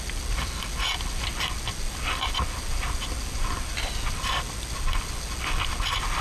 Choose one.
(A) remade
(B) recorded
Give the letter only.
B